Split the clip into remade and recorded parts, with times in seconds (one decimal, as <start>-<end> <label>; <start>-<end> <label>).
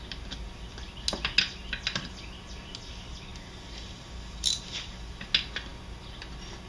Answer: 0.0-6.7 recorded